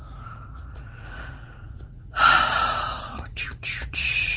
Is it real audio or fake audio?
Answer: fake